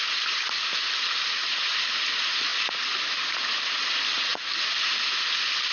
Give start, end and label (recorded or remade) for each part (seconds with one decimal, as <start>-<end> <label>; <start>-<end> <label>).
0.0-5.7 recorded